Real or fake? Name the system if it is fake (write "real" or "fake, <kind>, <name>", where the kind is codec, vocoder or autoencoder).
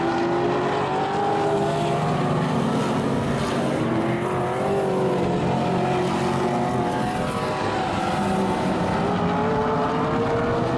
real